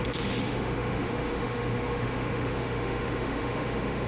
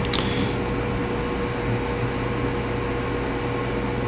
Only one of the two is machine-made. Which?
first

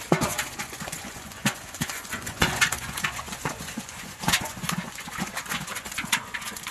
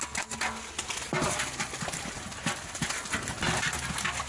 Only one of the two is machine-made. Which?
first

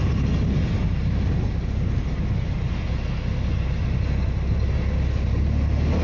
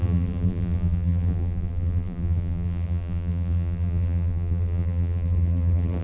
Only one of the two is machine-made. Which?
second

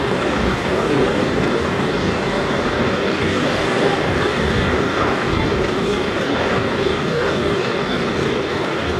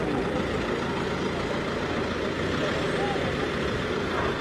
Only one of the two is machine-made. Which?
first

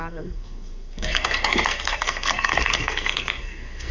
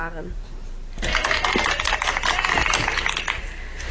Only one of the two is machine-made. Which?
first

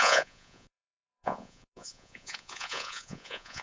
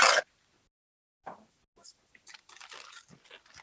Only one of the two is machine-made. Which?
first